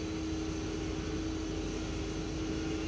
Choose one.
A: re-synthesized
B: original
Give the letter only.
B